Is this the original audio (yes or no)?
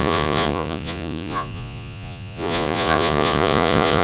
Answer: no